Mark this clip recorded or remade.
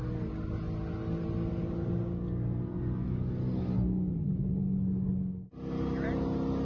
recorded